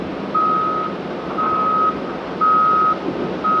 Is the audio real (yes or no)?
yes